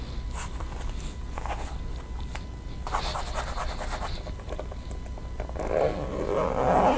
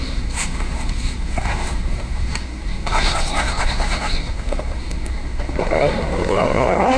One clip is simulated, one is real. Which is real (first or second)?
first